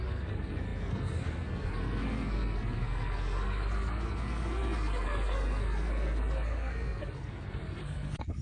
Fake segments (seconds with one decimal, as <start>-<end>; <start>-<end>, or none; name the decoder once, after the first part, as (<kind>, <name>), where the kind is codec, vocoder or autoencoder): 0.0-8.4 (codec, SNAC)